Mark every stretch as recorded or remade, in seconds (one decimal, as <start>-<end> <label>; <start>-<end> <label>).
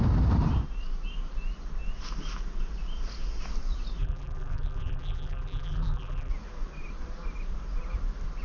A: 0.0-4.0 recorded; 4.0-6.3 remade; 6.3-8.4 recorded